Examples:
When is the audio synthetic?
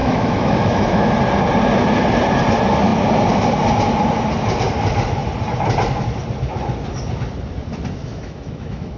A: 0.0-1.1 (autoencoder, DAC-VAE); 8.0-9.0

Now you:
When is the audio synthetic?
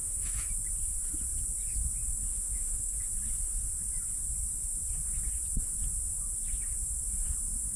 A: 0.0-0.5 (autoencoder, DAC-VAE); 2.3-3.0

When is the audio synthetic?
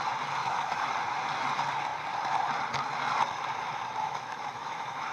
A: 0.4-0.9 (autoencoder, DAC-VAE); 4.0-5.1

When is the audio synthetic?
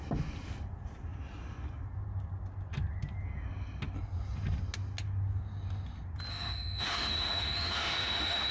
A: 6.3-8.5 (autoencoder, DAC-VAE)